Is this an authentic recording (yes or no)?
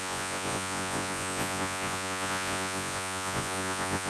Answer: no